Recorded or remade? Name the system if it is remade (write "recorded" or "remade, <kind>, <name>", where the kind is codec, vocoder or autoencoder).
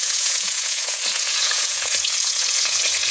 remade, vocoder, Vocos